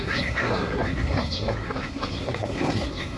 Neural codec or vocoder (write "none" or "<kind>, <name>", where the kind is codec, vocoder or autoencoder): codec, SNAC